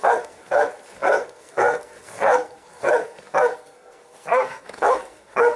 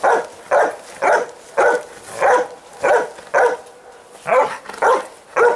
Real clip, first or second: second